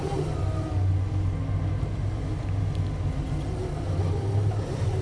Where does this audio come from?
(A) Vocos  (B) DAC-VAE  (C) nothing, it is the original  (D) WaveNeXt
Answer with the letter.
C